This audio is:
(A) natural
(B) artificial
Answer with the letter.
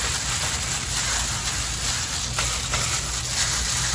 A